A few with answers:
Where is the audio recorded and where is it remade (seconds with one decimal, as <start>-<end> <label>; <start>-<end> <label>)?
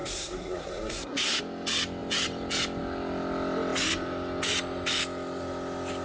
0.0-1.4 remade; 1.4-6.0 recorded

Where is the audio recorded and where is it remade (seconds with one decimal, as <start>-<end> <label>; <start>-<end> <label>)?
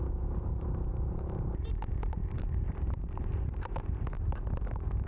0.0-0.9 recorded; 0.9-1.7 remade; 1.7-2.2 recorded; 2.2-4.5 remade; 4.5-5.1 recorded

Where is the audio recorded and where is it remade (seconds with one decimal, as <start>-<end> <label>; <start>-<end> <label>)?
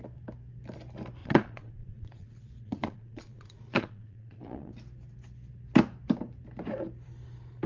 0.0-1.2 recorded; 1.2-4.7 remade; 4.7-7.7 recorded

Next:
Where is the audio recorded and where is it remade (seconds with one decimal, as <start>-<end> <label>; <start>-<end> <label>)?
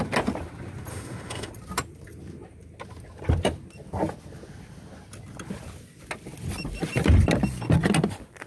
0.0-0.9 recorded; 0.9-1.5 remade; 1.5-8.5 recorded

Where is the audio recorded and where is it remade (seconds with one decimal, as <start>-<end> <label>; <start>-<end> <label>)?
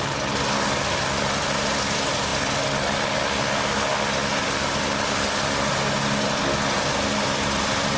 0.0-8.0 recorded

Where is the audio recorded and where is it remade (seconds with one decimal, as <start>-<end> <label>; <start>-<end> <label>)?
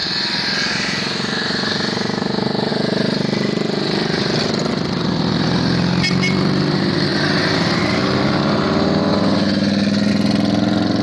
0.0-11.0 recorded